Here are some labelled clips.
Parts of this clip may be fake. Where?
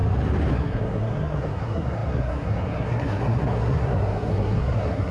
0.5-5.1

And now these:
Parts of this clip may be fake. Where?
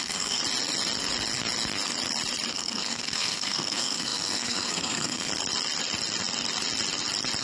0.0-0.4; 2.5-5.3